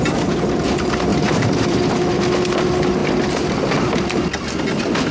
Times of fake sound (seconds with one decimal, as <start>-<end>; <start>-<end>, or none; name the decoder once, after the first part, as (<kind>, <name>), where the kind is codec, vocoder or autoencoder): 1.1-1.9 (vocoder, BigVGAN v2)